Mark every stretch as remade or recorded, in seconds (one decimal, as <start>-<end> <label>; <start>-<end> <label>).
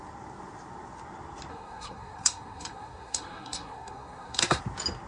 0.0-1.5 recorded; 1.5-4.6 remade; 4.6-5.1 recorded